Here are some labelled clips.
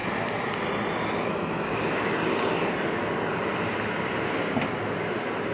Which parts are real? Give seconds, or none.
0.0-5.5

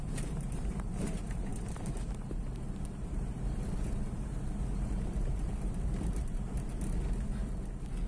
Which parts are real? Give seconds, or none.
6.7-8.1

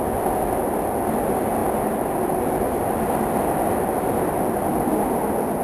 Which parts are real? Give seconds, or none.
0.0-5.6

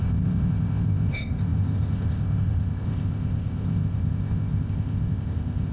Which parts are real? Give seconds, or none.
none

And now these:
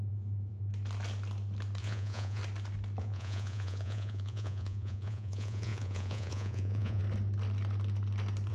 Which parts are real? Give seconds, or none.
0.7-1.8; 2.4-3.0; 7.0-8.5

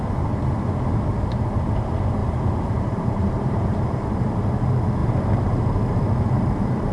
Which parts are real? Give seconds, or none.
0.0-2.2; 4.5-5.0; 5.6-6.9

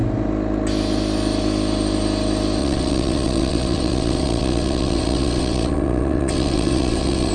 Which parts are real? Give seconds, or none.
0.0-2.6

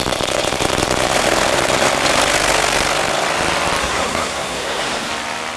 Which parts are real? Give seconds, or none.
0.0-3.8; 5.1-5.6